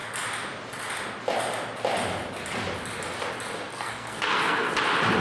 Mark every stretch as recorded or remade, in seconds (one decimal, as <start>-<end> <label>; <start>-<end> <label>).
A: 0.0-3.7 recorded; 3.7-4.7 remade; 4.7-5.2 recorded